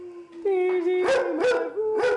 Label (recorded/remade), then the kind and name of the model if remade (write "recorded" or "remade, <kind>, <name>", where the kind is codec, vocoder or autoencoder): recorded